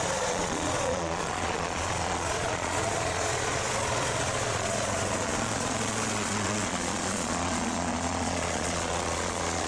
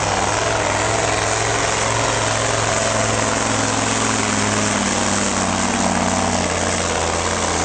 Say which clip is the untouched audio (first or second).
second